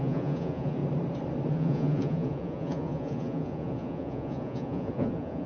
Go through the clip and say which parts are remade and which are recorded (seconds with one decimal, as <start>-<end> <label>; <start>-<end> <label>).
0.0-0.8 remade; 0.8-1.5 recorded; 1.5-5.5 remade